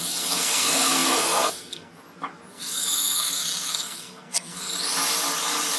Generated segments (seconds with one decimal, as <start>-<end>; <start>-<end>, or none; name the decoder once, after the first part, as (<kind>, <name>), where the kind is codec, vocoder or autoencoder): 0.0-2.0 (codec, SNAC); 2.5-4.7

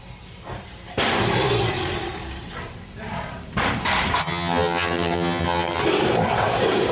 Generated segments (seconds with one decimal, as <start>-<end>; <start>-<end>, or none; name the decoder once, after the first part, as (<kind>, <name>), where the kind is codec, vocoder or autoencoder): 4.2-5.8 (vocoder, HiFi-GAN)

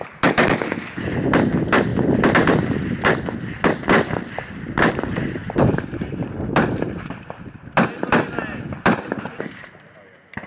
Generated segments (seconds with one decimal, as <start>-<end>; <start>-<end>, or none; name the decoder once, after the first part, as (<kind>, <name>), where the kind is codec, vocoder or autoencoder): none

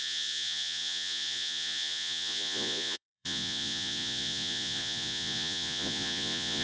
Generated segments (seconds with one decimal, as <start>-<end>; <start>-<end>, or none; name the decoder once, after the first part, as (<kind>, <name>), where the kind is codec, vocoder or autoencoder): 0.0-6.6 (vocoder, Vocos)

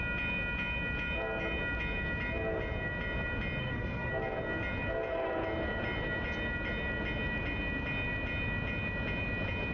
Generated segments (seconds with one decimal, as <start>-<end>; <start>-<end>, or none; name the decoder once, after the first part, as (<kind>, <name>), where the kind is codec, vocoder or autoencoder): 3.6-4.1 (codec, SNAC)

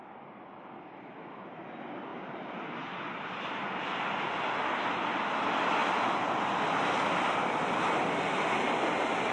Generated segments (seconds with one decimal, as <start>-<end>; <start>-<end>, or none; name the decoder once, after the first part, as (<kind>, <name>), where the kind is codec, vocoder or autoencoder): none